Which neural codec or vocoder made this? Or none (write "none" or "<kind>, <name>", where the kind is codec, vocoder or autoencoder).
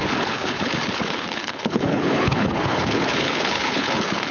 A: codec, HILCodec